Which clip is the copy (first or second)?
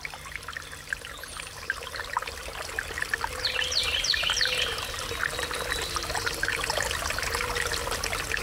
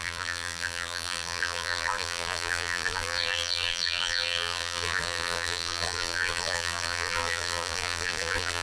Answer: second